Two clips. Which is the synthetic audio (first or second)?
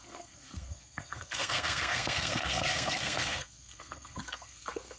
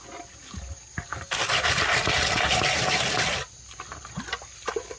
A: first